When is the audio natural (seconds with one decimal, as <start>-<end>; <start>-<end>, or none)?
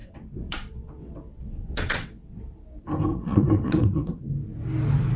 2.4-3.1; 4.2-5.2